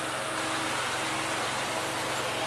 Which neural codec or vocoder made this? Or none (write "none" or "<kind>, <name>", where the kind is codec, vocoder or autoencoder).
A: none